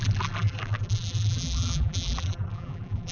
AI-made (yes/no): yes